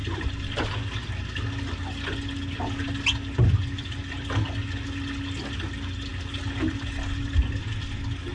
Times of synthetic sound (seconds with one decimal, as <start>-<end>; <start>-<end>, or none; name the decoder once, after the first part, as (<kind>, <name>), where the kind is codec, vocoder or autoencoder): none